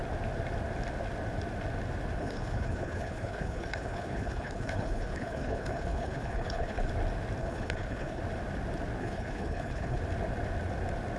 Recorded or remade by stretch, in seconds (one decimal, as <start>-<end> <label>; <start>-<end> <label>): 0.0-2.2 recorded; 2.2-6.9 remade; 6.9-7.4 recorded; 7.4-8.2 remade; 8.2-9.0 recorded; 9.0-10.0 remade; 10.0-11.2 recorded